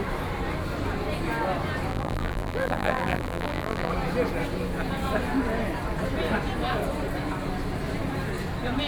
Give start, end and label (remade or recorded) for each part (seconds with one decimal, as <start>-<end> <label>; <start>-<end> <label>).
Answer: 0.0-1.9 recorded; 1.9-3.9 remade; 3.9-8.9 recorded